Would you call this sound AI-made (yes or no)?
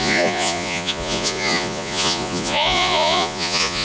yes